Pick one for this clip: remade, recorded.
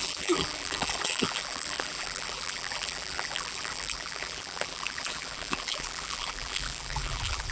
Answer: remade